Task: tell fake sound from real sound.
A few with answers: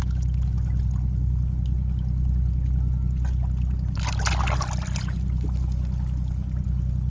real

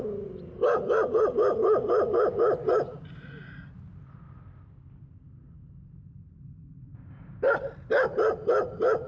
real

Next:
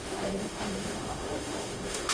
fake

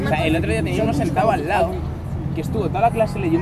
real